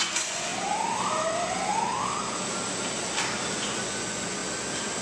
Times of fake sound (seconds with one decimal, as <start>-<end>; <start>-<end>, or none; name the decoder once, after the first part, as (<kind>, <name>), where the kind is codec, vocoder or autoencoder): 0.0-0.5 (vocoder, Vocos); 3.5-4.4